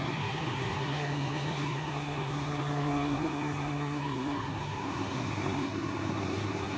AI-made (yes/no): yes